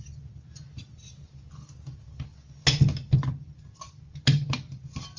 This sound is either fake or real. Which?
real